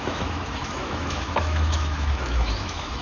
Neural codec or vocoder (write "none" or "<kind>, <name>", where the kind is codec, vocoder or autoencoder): autoencoder, DAC-VAE